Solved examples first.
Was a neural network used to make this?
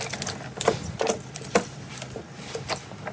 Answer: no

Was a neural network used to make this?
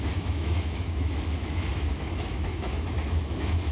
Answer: yes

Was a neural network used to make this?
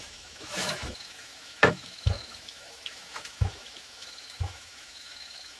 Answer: yes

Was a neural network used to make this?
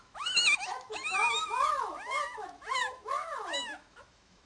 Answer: yes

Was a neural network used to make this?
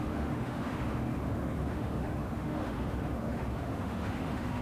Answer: yes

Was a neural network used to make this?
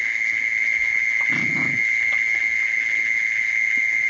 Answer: no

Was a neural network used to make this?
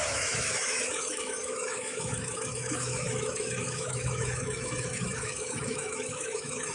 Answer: yes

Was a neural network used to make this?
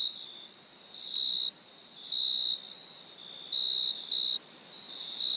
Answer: no